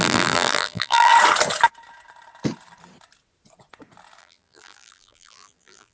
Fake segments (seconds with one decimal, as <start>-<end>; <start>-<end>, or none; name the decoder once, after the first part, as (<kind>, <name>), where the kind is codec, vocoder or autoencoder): 0.0-1.1 (vocoder, BigVGAN v2); 4.2-5.9